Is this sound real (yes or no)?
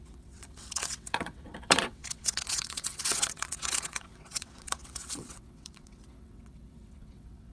no